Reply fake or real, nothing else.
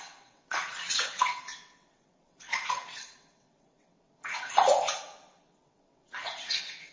fake